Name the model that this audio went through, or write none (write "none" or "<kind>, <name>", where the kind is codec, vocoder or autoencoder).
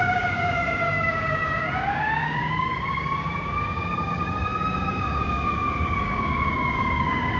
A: codec, DAC